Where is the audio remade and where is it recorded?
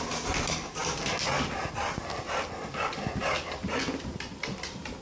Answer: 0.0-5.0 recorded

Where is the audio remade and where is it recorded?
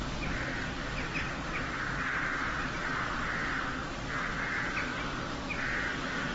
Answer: 0.0-6.3 recorded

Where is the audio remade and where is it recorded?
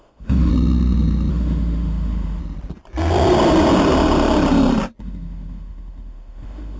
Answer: 0.0-0.5 remade; 0.5-1.3 recorded; 1.3-2.4 remade; 2.4-5.0 recorded; 5.0-6.8 remade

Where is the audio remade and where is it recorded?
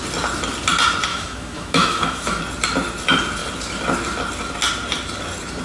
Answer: 0.0-1.1 recorded; 1.1-2.4 remade; 2.4-5.6 recorded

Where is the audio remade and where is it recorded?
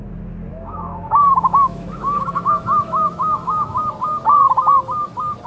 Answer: 0.0-0.5 recorded; 0.5-3.8 remade; 3.8-5.5 recorded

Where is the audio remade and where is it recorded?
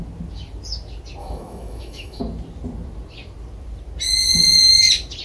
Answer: 0.0-1.2 recorded; 1.2-2.2 remade; 2.2-5.2 recorded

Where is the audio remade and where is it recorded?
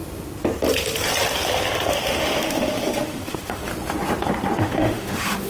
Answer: 0.0-1.9 recorded; 1.9-3.7 remade; 3.7-4.6 recorded; 4.6-5.5 remade